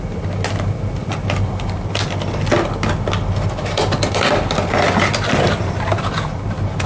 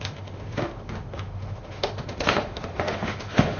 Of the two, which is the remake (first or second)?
second